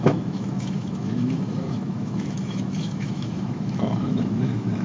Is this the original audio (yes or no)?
no